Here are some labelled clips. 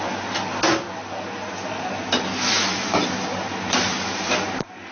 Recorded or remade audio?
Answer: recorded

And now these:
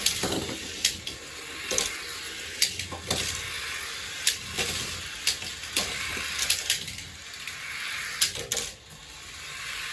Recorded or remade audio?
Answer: recorded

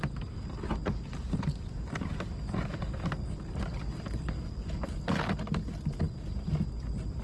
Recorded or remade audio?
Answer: recorded